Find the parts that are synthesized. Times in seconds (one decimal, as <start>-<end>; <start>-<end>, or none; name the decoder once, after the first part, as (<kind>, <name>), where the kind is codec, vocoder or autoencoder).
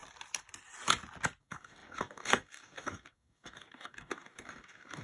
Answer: 1.4-5.0 (codec, DAC)